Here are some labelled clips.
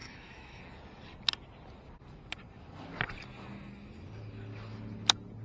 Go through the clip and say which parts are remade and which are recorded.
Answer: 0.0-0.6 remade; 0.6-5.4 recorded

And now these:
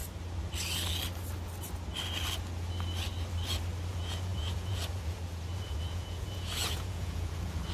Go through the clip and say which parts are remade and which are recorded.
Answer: 0.0-3.9 recorded; 3.9-7.7 remade

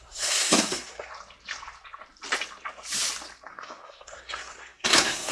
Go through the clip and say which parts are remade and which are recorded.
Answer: 0.0-1.1 remade; 1.1-3.5 recorded; 3.5-5.3 remade

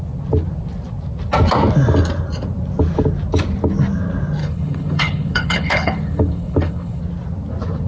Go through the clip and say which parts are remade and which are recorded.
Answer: 0.0-4.4 recorded; 4.4-7.0 remade; 7.0-7.9 recorded